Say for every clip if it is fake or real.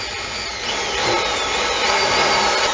real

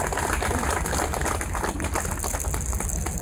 real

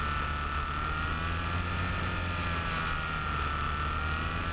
real